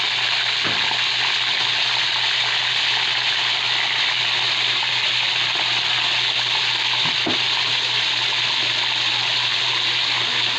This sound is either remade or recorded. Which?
recorded